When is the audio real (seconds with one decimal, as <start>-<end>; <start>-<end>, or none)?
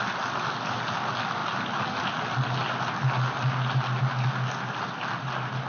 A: 0.0-5.7